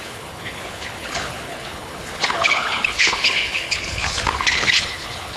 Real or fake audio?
fake